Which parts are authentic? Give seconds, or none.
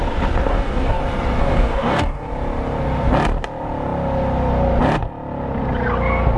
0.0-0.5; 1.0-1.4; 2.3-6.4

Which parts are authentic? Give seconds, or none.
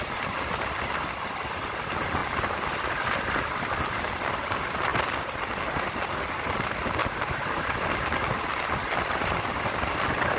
0.0-10.4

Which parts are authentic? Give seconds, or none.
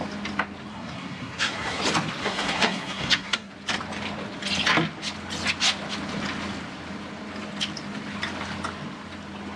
0.0-0.7; 1.8-2.2; 3.5-9.6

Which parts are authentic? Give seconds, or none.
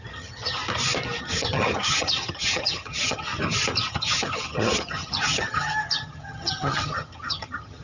0.6-1.2; 3.3-3.9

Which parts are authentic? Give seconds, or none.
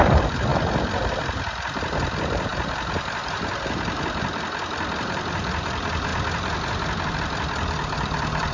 0.5-1.2; 6.1-7.1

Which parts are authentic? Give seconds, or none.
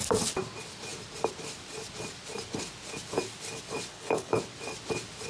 0.0-3.9; 4.4-5.3